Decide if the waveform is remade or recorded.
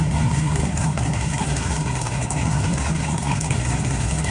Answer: remade